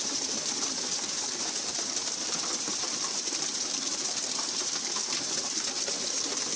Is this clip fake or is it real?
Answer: fake